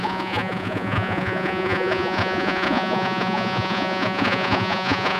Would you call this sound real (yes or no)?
no